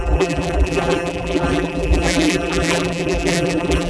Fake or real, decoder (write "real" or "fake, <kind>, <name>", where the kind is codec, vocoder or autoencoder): fake, vocoder, BigVGAN v2